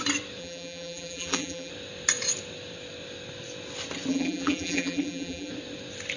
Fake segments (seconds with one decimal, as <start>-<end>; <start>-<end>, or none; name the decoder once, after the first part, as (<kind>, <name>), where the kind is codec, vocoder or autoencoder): 0.4-1.7 (vocoder, BigVGAN v2); 4.1-5.5